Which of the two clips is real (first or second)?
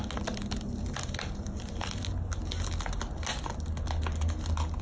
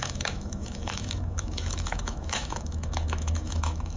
first